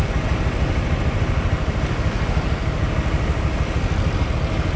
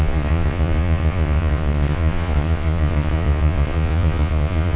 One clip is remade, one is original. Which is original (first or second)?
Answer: first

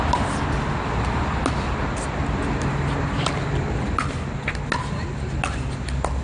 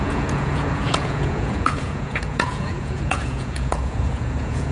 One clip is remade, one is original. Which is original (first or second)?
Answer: first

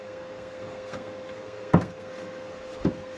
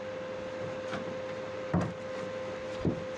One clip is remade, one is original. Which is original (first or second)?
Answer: second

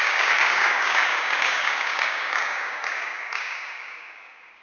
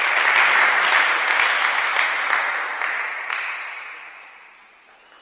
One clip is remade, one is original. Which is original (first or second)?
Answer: second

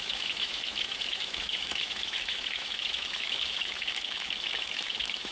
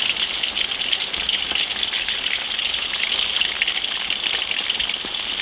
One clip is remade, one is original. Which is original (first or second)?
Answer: second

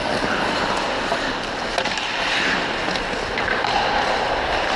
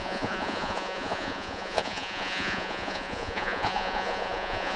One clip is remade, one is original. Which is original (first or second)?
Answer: first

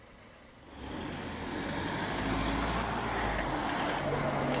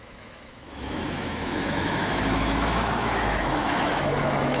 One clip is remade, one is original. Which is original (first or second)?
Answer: first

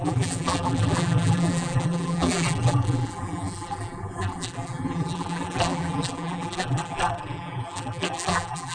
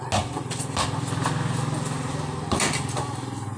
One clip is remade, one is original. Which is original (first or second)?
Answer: second